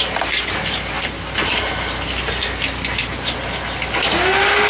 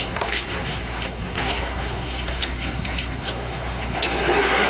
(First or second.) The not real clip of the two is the second